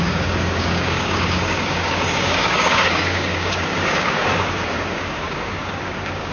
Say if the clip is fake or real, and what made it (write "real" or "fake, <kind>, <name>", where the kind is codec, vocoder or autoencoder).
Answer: fake, codec, DAC